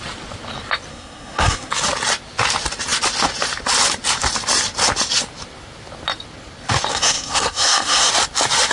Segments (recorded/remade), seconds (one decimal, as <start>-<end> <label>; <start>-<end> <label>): 0.0-0.9 recorded; 0.9-1.7 remade; 1.7-6.9 recorded; 6.9-8.1 remade; 8.1-8.7 recorded